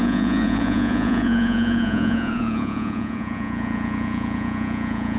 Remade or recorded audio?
remade